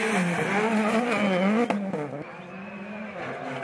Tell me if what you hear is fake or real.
real